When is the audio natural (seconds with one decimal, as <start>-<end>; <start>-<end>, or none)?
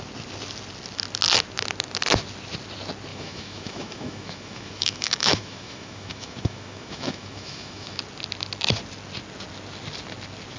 0.0-3.1; 8.0-10.6